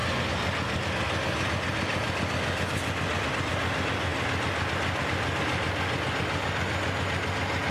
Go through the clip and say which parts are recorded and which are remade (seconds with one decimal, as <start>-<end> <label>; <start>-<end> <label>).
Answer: 0.0-7.7 recorded